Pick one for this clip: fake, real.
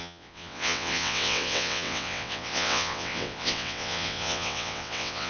fake